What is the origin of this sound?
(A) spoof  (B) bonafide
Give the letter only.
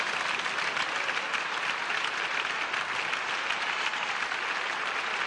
B